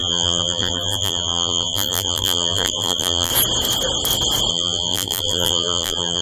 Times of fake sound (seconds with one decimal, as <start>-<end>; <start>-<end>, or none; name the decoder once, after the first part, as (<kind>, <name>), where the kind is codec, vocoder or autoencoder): 0.0-3.3 (vocoder, BigVGAN v2); 4.5-6.2